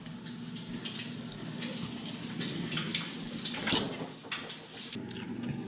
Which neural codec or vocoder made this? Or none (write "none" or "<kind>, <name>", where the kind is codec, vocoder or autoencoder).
none